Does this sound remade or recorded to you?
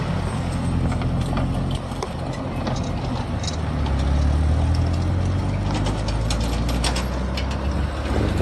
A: recorded